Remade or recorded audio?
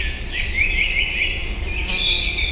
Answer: recorded